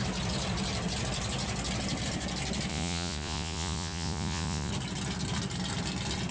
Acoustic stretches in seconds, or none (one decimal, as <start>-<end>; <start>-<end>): 0.0-2.7; 4.7-6.3